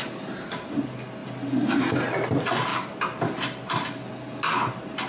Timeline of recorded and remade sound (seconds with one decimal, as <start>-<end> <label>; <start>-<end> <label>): 0.0-5.1 recorded